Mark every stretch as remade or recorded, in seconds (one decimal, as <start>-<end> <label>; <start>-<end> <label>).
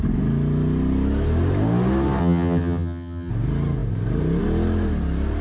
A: 0.0-2.2 recorded; 2.2-3.3 remade; 3.3-5.4 recorded